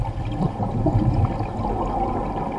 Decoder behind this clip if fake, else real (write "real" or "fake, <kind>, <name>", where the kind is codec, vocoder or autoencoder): real